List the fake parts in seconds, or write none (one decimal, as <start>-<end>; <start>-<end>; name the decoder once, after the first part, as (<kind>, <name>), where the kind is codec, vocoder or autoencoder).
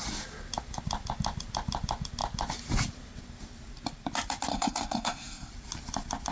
4.5-5.5 (codec, SNAC)